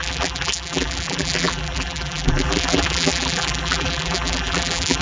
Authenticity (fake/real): fake